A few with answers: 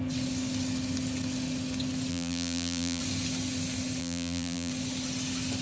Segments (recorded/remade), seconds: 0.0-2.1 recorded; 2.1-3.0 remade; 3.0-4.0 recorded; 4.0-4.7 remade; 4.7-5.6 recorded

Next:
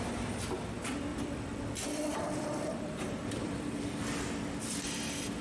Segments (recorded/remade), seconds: 0.0-1.1 recorded; 1.1-4.3 remade; 4.3-5.4 recorded

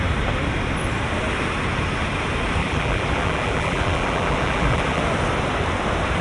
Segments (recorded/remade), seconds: 0.0-2.6 recorded; 2.6-5.0 remade; 5.0-6.2 recorded

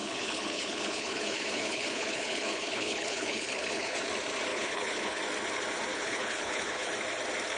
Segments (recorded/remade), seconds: 0.0-4.0 remade; 4.0-4.5 recorded; 4.5-5.2 remade; 5.2-5.9 recorded; 5.9-6.9 remade; 6.9-7.6 recorded

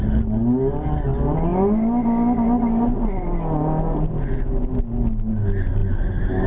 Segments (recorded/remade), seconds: 0.0-6.5 recorded